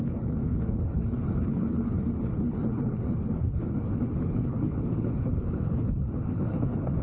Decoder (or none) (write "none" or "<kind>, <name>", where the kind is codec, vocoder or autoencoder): codec, HILCodec